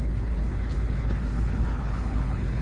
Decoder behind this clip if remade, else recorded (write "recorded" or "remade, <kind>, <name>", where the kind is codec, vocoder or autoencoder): remade, codec, HILCodec